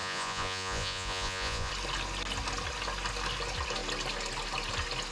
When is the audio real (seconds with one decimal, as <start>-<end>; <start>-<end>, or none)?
1.7-5.1